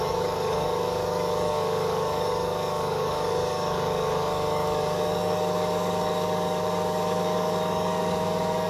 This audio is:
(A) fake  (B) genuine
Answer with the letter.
A